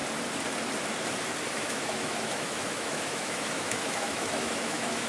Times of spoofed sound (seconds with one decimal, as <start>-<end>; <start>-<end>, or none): 1.5-5.1